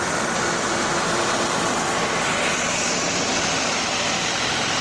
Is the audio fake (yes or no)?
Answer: yes